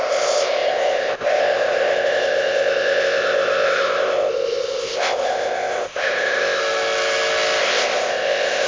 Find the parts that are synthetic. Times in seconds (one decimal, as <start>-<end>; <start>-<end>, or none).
0.0-6.6; 7.6-8.7